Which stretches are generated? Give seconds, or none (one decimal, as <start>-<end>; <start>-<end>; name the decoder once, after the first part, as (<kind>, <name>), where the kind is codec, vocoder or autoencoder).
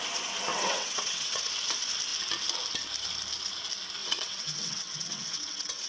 0.5-1.4 (vocoder, WaveNeXt); 4.0-5.9